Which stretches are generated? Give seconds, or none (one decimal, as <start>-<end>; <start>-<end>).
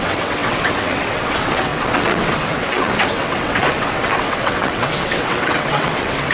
0.0-6.3